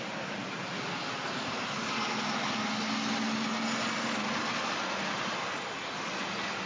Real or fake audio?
real